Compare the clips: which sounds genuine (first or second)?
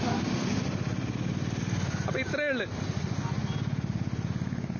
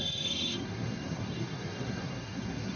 first